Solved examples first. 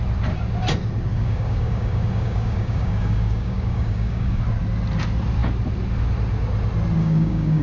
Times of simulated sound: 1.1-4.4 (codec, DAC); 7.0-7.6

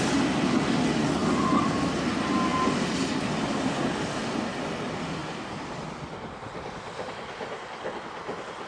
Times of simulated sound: none

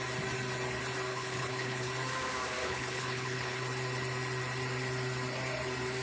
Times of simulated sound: 1.1-1.9 (codec, HILCodec); 2.6-3.6

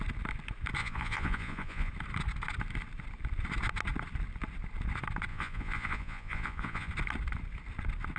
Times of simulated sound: 0.8-1.9 (vocoder, Vocos); 5.3-6.9

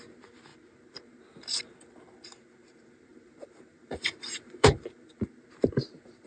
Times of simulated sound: 3.1-5.1 (vocoder, BigVGAN v2)